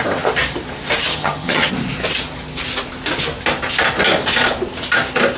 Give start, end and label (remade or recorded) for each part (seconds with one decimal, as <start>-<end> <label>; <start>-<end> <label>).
0.0-1.1 recorded; 1.1-1.7 remade; 1.7-5.4 recorded